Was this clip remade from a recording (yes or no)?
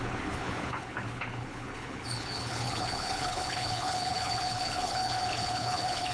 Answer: yes